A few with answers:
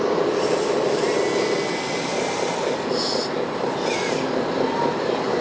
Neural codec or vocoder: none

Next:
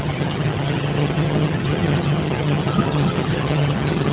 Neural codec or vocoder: vocoder, HiFi-GAN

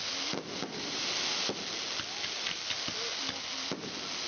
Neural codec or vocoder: none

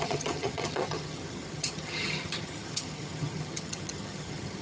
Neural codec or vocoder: vocoder, HiFi-GAN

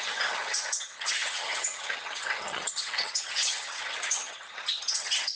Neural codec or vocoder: vocoder, HiFi-GAN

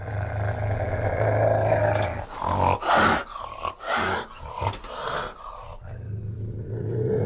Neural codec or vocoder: none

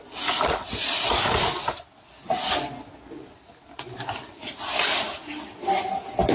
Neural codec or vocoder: none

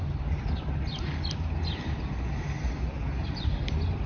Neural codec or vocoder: none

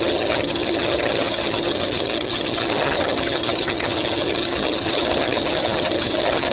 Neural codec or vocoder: vocoder, HiFi-GAN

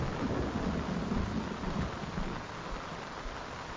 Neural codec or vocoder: none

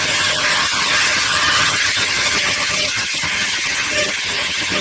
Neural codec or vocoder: vocoder, HiFi-GAN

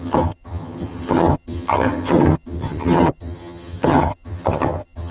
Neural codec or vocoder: vocoder, HiFi-GAN